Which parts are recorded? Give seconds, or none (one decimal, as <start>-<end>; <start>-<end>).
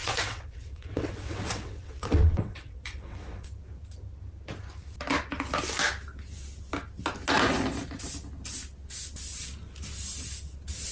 3.5-10.9